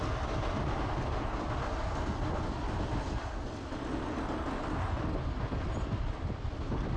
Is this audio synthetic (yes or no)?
no